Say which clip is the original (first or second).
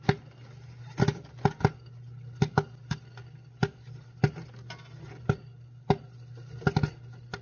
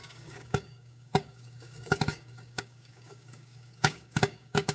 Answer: first